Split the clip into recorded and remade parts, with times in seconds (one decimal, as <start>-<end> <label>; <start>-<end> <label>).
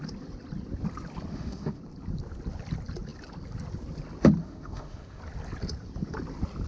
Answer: 0.0-1.3 recorded; 1.3-1.8 remade; 1.8-4.4 recorded; 4.4-5.2 remade; 5.2-6.7 recorded